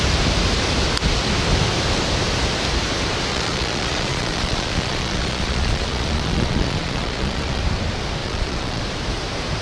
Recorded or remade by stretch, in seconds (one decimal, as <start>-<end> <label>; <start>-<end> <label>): 0.0-3.3 recorded; 3.3-7.6 remade; 7.6-8.2 recorded; 8.2-8.8 remade; 8.8-9.6 recorded